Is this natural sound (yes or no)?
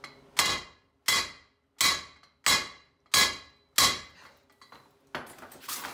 yes